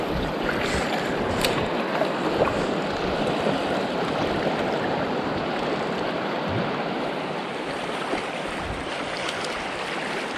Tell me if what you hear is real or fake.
real